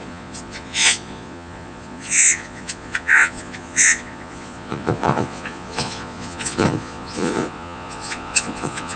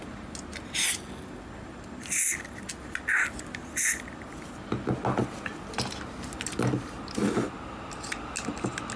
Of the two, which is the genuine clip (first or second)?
second